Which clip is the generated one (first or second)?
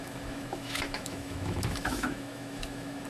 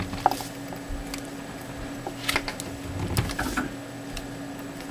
first